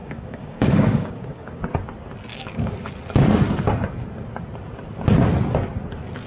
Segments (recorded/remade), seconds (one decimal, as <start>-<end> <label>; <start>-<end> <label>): 0.0-1.6 remade; 1.6-2.3 recorded; 2.3-2.9 remade; 2.9-6.3 recorded